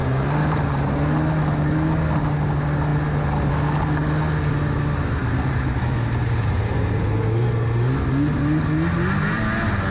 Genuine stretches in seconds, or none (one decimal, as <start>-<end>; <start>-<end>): 0.0-5.2; 6.8-9.9